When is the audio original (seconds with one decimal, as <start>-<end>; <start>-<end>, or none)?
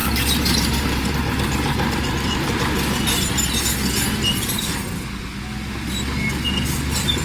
1.1-7.2